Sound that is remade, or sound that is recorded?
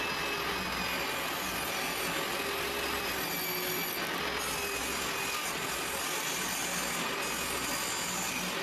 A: recorded